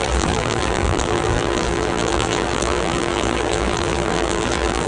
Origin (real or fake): fake